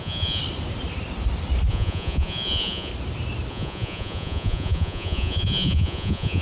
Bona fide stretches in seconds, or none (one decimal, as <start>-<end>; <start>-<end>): 0.4-1.7; 2.9-3.5